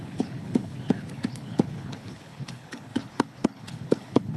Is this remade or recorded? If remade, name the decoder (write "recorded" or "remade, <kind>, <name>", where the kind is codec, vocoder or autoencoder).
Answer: remade, codec, HILCodec